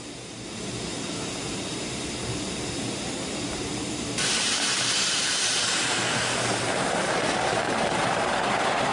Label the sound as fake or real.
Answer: fake